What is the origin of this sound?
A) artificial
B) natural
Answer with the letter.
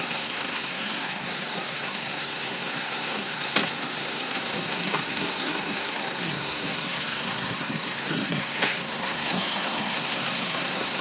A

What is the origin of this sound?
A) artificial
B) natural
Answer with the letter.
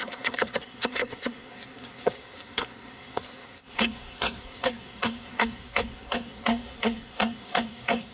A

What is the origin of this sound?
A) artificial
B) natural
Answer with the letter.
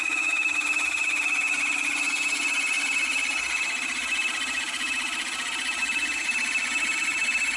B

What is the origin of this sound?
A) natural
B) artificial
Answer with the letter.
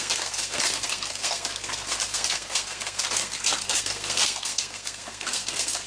B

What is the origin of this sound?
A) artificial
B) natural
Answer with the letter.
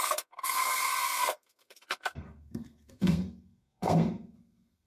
A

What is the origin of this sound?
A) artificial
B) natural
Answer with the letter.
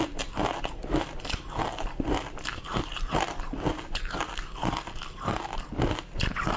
B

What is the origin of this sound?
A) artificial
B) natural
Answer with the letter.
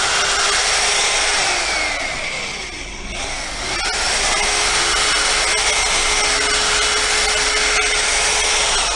B